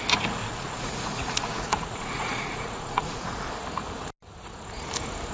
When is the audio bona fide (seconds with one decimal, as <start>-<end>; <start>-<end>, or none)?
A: 0.0-0.4; 3.5-5.3